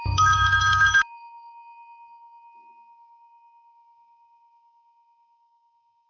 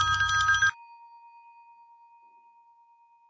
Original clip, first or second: second